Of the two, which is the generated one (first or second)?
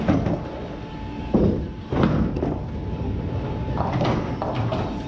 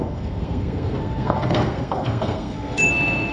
second